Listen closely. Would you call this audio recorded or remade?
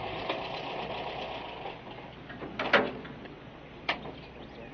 recorded